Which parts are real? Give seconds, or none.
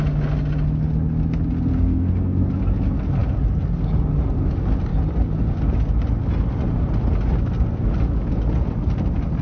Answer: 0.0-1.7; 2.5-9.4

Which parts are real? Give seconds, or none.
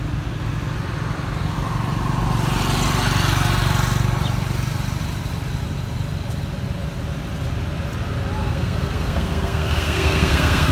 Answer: 0.0-8.4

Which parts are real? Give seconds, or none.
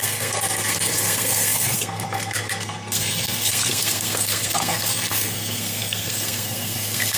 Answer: none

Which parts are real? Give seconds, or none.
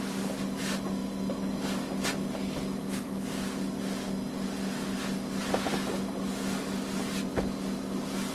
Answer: 0.0-8.3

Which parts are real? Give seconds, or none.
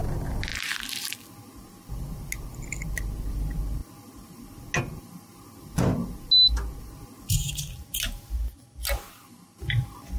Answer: 0.0-10.2